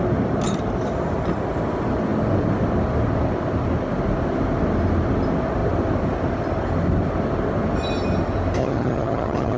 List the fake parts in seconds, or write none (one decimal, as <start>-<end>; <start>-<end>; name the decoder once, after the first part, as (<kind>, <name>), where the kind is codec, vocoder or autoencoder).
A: 8.6-9.6 (vocoder, HiFi-GAN)

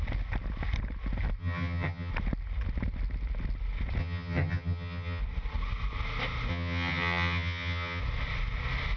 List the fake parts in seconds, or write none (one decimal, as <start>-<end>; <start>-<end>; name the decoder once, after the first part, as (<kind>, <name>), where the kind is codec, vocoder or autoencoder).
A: 1.4-2.1 (vocoder, HiFi-GAN); 4.0-5.2; 6.5-8.0